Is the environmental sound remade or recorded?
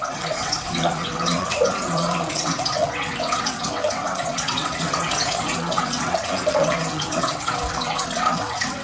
remade